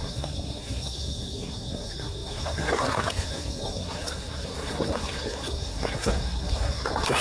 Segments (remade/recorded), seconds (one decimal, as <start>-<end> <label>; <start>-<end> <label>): 0.0-7.2 remade